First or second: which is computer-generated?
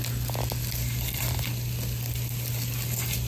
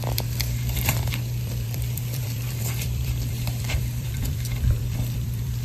second